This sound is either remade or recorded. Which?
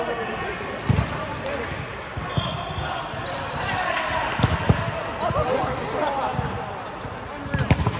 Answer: recorded